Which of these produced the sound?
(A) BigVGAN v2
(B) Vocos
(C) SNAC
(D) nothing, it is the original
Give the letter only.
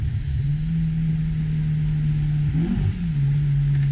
D